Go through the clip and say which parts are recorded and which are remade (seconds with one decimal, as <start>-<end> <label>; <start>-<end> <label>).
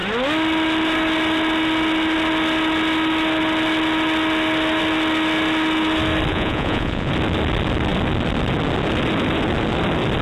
0.0-6.3 recorded; 6.3-7.1 remade; 7.1-10.2 recorded